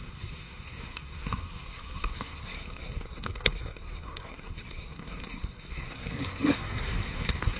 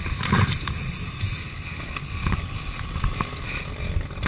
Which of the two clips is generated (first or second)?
first